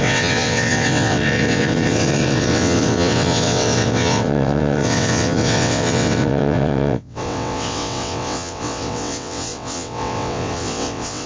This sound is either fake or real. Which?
fake